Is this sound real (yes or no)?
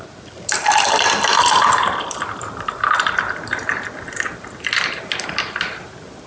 yes